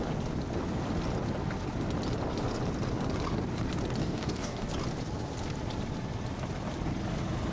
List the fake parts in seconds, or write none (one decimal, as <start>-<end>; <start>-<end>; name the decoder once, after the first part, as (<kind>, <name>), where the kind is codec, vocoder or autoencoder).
4.0-4.7 (codec, DAC)